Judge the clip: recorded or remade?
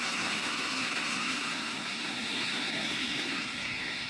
remade